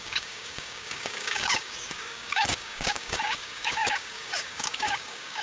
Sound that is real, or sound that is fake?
fake